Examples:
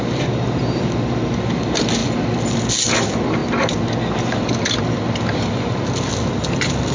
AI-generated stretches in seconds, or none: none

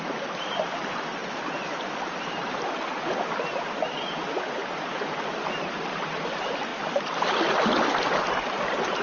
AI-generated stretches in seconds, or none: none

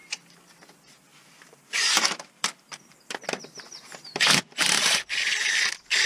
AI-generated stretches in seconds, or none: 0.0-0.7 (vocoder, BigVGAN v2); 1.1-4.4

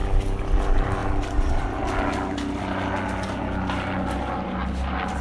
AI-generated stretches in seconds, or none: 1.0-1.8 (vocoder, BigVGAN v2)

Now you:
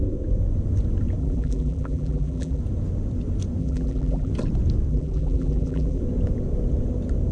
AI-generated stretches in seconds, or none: 1.2-2.6 (vocoder, BigVGAN v2); 3.6-4.3; 4.9-6.0

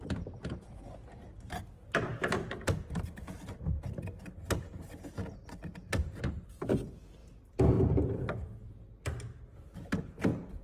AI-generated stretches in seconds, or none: 2.1-4.0 (vocoder, BigVGAN v2); 7.2-8.1

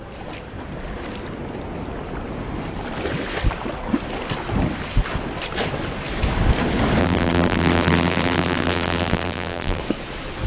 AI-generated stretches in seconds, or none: 7.0-9.8 (vocoder, BigVGAN v2)